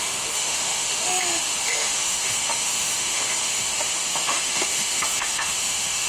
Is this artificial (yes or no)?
yes